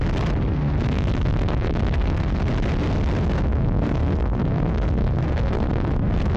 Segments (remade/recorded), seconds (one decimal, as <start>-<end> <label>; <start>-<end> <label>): 0.0-0.5 recorded; 0.5-2.4 remade; 2.4-3.5 recorded; 3.5-6.4 remade